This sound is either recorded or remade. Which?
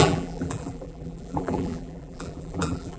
remade